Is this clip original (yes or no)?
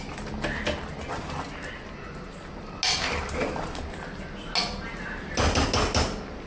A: yes